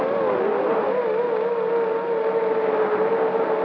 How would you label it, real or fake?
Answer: real